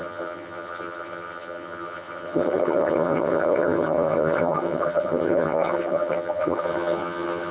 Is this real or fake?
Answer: fake